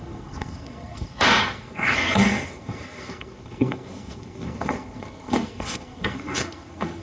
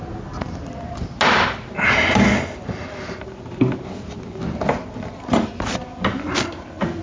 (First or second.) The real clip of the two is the second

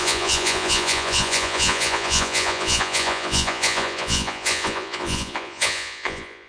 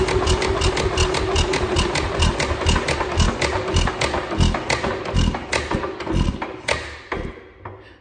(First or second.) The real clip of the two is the second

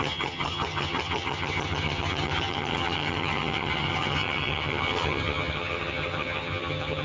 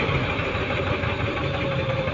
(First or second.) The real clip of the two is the second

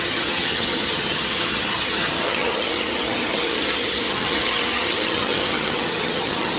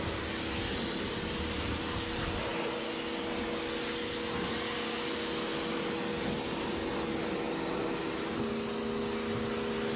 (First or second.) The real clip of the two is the second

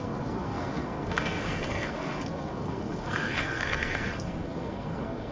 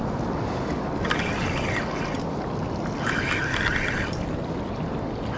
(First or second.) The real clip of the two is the second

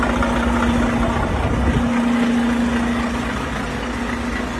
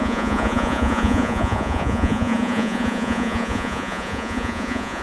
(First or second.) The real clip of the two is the first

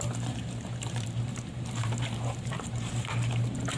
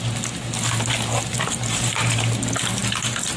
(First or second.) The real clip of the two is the second